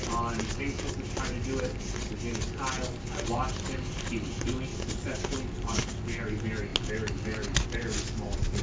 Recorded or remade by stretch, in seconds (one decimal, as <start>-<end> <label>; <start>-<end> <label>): 0.0-8.6 recorded